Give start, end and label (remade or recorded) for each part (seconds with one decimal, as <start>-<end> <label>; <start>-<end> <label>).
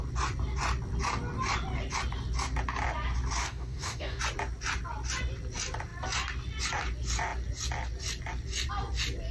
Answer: 0.0-3.4 recorded; 3.4-4.2 remade; 4.2-9.3 recorded